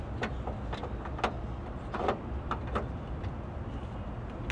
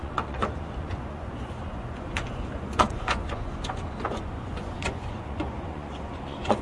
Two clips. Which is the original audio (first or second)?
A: first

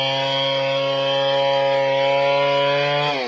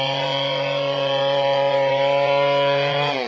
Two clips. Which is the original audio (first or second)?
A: first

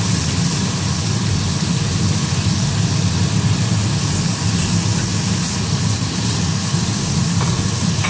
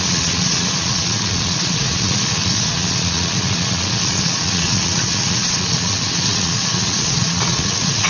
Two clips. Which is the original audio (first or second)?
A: first